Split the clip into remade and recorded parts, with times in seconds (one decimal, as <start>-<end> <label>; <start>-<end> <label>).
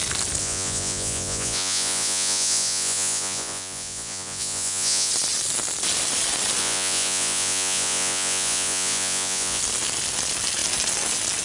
0.0-0.4 recorded; 0.4-5.1 remade; 5.1-6.6 recorded; 6.6-9.6 remade; 9.6-11.4 recorded